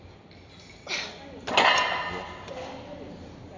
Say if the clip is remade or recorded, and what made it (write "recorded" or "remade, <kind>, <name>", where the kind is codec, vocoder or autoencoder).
recorded